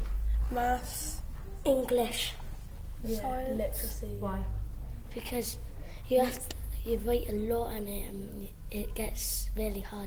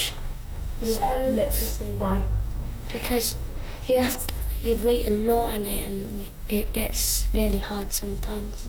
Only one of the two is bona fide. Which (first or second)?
first